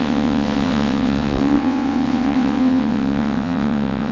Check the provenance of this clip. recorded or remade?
remade